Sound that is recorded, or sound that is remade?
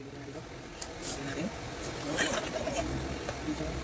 recorded